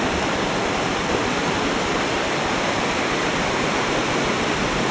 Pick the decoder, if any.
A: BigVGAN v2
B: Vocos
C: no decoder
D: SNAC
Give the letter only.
C